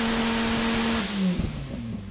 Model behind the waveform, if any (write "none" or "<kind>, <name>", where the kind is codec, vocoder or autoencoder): none